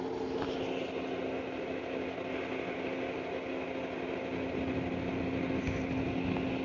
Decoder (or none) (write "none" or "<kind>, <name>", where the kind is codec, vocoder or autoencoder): none